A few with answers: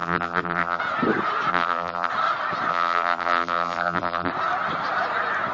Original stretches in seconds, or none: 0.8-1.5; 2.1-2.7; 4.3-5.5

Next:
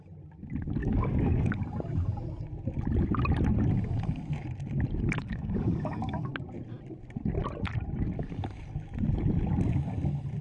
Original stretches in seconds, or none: 0.0-0.8; 1.6-5.2; 6.3-10.4